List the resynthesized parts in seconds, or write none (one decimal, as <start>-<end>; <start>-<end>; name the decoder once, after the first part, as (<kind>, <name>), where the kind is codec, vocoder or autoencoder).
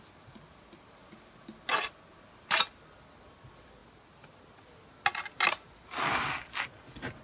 none